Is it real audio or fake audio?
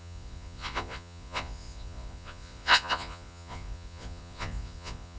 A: fake